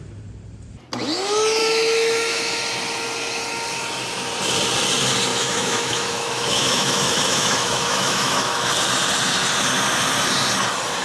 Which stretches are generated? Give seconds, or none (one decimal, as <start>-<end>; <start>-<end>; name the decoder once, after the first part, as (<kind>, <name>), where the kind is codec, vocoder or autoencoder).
1.6-2.6 (autoencoder, DAC-VAE); 5.3-8.7